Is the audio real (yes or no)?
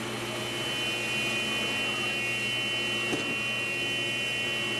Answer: yes